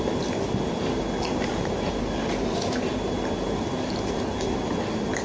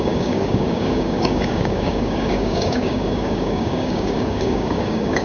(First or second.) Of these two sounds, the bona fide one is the first